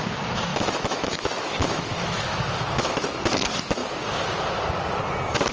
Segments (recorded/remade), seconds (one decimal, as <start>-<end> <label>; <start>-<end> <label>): 0.0-0.5 recorded; 0.5-3.2 remade; 3.2-5.5 recorded